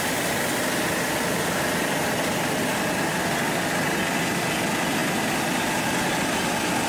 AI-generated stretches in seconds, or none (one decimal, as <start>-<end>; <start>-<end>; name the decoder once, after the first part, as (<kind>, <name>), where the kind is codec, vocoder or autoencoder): none